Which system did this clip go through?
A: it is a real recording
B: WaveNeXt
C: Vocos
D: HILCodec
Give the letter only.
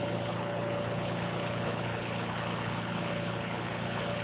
D